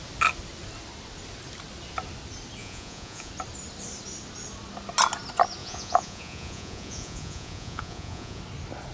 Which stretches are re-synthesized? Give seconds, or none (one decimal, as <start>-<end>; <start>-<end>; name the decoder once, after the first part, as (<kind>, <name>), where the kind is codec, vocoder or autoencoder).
2.6-3.3 (vocoder, Vocos); 5.6-8.4